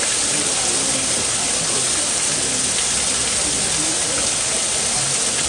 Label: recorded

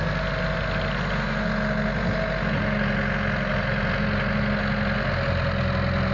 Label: recorded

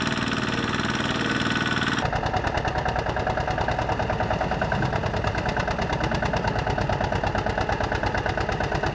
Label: recorded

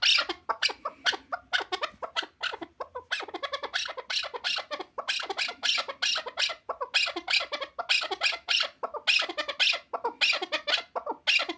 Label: recorded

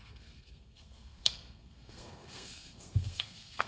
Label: remade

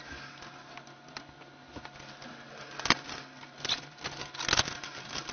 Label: recorded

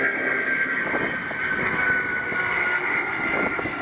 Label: recorded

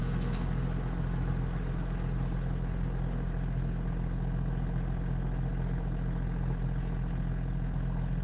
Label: recorded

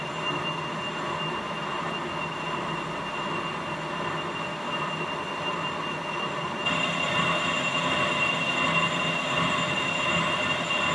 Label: recorded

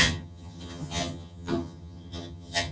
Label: remade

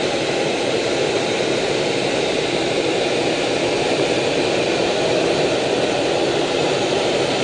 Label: recorded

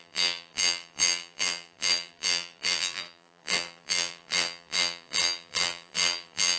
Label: remade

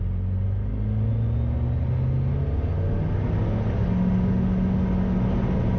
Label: recorded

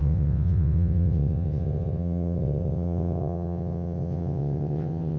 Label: remade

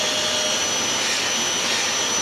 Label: recorded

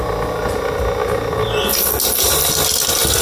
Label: recorded